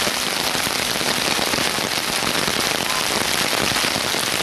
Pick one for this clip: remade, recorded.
recorded